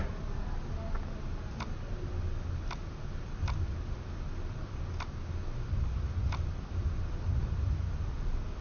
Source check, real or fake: real